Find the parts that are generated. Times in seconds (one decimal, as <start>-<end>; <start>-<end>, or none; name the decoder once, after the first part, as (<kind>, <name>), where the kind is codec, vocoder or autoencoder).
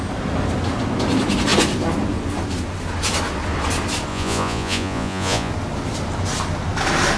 4.1-5.5 (vocoder, Vocos)